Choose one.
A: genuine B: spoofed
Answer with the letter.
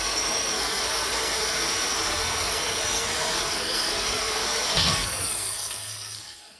B